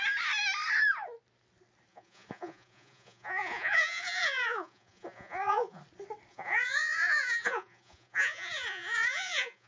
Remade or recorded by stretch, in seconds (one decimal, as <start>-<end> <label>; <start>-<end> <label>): 0.0-1.9 recorded; 1.9-5.8 remade; 5.8-6.3 recorded; 6.3-9.7 remade

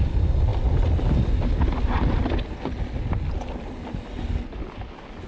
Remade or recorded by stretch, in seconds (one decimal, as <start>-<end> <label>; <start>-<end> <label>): 0.0-5.3 recorded

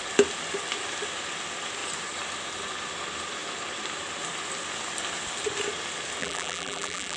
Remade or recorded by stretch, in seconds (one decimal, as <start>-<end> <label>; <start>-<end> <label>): 0.0-6.2 recorded; 6.2-7.2 remade

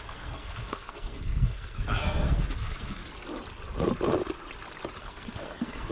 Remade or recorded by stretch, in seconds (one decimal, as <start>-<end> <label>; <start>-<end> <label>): 0.0-3.0 remade; 3.0-5.0 recorded; 5.0-5.9 remade

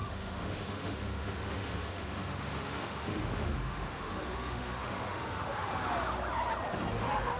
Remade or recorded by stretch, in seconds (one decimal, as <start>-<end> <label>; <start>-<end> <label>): 0.0-5.7 remade; 5.7-6.9 recorded; 6.9-7.4 remade

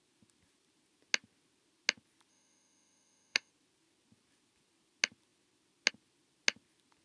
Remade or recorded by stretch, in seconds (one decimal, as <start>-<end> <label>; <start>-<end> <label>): 0.0-2.3 recorded; 2.3-3.5 remade; 3.5-7.0 recorded